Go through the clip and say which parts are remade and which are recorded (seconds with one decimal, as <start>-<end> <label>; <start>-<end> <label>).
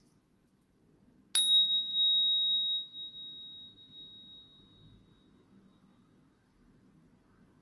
0.0-7.6 recorded